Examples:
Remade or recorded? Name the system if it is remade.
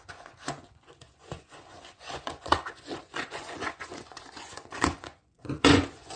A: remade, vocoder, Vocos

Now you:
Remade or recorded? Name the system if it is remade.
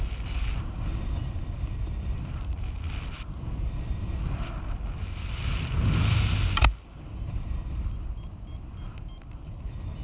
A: recorded